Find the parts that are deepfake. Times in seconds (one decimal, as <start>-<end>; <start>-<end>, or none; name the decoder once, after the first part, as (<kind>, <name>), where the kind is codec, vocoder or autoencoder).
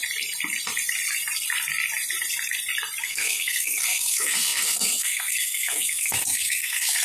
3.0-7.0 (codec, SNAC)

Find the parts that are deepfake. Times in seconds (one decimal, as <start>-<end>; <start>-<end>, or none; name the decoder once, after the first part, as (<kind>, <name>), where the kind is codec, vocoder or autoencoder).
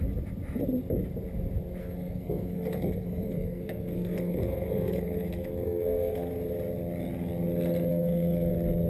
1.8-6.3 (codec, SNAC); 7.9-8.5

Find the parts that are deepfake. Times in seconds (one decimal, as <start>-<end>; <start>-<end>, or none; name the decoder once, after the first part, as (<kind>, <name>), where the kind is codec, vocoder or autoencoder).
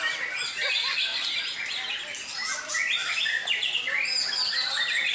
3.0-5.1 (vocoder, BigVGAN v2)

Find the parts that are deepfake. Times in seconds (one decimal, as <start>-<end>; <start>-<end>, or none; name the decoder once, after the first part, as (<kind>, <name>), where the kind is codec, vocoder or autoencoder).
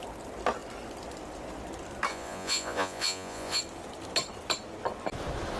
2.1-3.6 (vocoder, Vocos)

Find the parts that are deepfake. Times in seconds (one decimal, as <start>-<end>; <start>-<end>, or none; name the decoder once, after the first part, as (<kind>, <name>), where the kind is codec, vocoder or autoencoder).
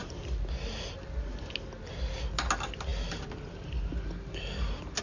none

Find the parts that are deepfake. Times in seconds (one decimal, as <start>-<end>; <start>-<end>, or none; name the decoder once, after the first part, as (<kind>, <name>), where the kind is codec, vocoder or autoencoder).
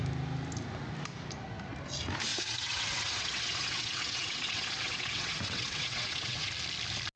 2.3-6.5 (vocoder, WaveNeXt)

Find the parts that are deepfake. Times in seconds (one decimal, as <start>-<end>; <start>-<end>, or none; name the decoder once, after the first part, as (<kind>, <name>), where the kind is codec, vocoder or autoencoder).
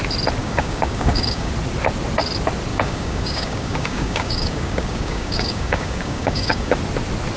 0.4-1.5 (codec, DAC); 2.7-6.7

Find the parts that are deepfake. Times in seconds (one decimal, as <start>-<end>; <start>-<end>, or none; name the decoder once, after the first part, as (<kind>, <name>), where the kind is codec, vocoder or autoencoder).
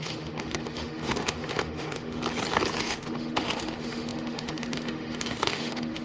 0.0-2.2 (autoencoder, DAC-VAE); 2.8-6.0